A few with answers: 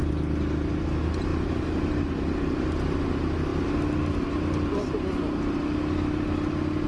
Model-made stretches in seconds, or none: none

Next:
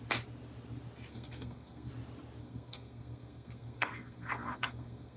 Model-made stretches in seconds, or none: 1.1-1.9; 2.4-5.2

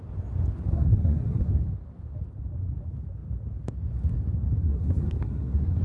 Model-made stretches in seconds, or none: 0.7-1.5; 4.6-5.8

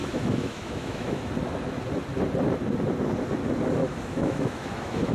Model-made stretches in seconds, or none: 0.0-1.3; 3.8-5.1

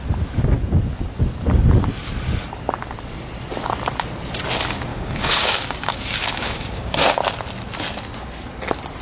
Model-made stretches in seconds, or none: 4.9-7.2